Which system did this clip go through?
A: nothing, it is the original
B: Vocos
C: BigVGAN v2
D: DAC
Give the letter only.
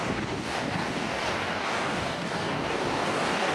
D